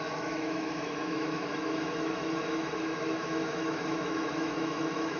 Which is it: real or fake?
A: fake